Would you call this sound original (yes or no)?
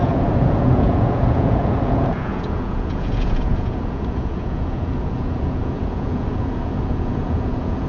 no